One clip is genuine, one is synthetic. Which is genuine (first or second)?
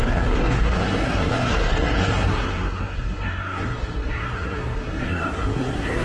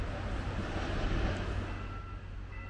second